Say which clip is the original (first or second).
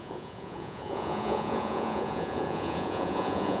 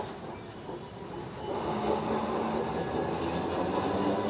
second